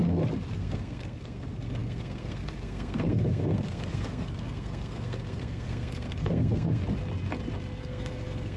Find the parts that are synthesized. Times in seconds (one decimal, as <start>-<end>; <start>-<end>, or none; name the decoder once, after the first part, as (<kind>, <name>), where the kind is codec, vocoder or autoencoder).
0.5-6.8 (codec, SNAC); 7.8-8.6